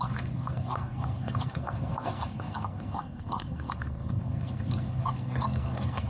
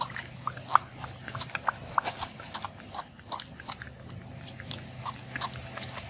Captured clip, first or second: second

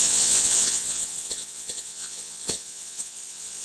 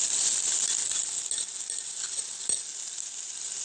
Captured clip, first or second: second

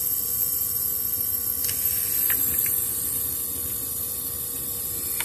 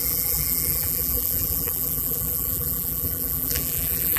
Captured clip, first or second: first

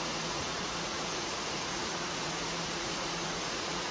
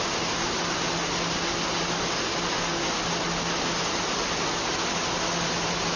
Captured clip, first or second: second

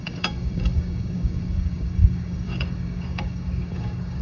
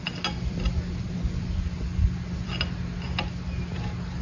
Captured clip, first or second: second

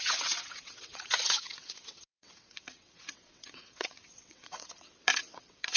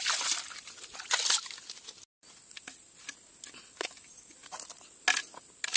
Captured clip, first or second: second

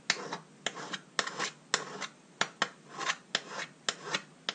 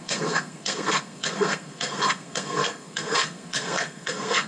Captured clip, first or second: first